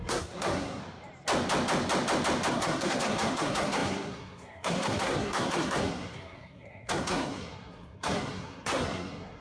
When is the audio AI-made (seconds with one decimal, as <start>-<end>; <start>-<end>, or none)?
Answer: 0.0-0.8; 2.5-9.4